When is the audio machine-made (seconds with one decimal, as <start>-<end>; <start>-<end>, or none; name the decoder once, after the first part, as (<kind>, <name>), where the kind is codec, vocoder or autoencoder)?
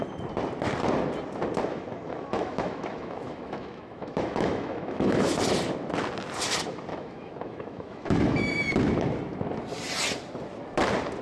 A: 1.7-5.3 (autoencoder, DAC-VAE); 6.9-8.4